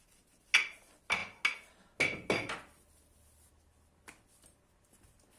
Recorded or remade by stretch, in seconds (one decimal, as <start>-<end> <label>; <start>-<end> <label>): 0.0-5.4 recorded